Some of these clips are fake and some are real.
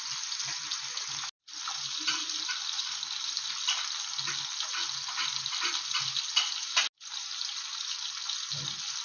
real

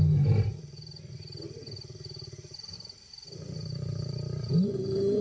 real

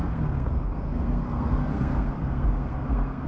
fake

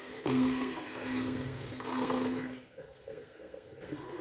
fake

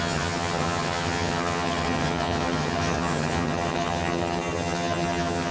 fake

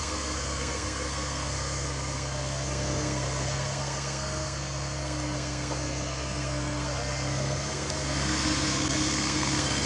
fake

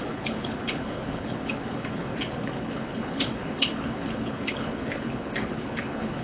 fake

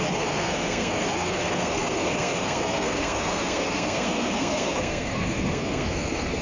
fake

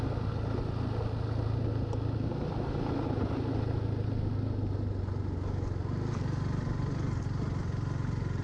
real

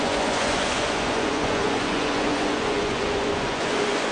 fake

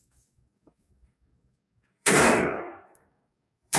fake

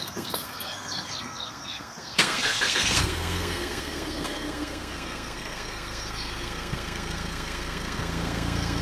fake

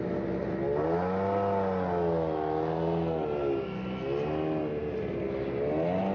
real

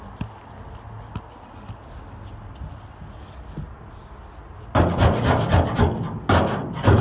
real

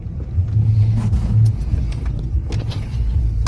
real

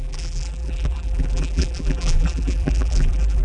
fake